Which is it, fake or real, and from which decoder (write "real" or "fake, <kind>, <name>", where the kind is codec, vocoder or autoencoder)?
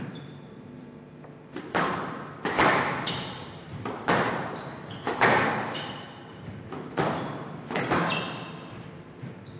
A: fake, vocoder, BigVGAN v2